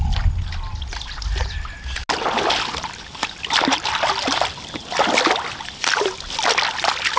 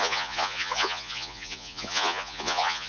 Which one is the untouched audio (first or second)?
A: first